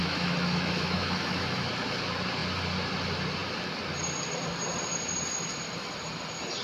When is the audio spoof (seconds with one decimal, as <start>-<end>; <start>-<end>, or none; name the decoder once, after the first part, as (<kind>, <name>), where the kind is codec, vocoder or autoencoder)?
0.0-1.7 (autoencoder, DAC-VAE)